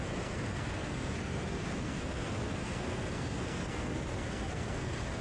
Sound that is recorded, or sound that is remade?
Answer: remade